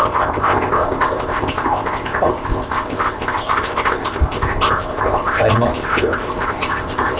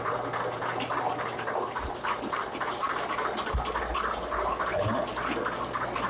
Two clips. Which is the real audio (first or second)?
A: second